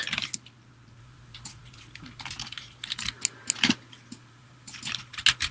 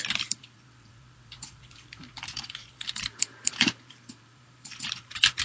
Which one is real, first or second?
first